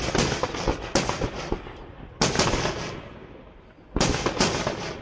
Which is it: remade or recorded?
recorded